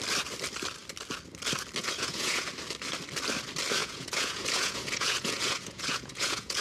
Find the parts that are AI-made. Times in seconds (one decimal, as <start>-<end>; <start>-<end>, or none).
1.8-2.5; 3.8-6.6

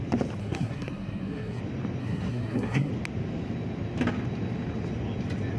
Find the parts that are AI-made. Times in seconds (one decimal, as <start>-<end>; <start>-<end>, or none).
0.4-1.6; 2.0-2.9

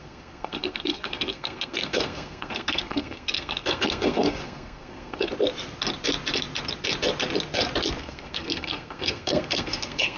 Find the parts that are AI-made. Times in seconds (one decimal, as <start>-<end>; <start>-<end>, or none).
0.0-5.3; 8.0-10.2

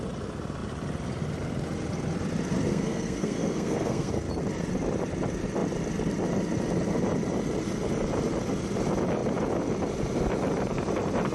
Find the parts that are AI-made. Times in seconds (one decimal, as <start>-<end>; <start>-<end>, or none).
2.7-4.1

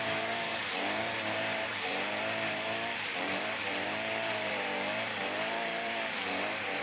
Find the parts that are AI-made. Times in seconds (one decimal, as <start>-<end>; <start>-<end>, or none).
0.0-6.8